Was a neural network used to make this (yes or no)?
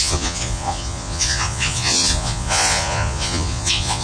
yes